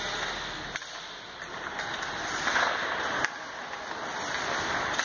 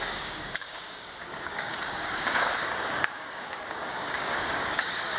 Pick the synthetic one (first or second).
second